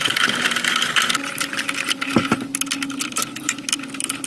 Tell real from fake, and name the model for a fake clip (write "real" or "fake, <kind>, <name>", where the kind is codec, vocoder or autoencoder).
real